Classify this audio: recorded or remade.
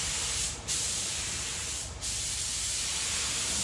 remade